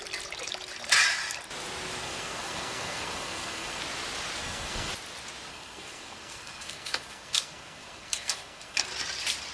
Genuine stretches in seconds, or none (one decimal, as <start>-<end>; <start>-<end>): 0.0-2.0; 3.8-4.4; 4.9-5.5; 8.9-9.5